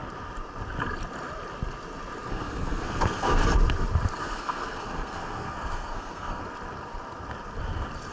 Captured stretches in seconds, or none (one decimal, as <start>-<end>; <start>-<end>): 0.0-2.3; 3.4-4.2; 6.4-8.1